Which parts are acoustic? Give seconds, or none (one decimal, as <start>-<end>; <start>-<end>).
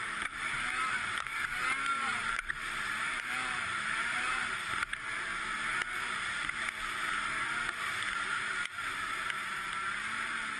4.4-8.1